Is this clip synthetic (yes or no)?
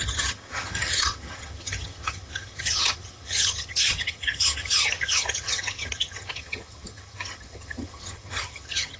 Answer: yes